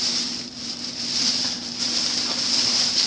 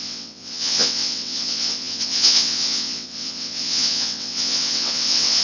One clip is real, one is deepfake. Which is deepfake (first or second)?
second